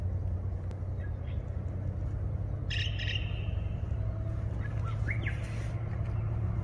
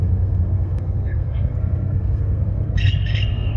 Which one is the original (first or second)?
first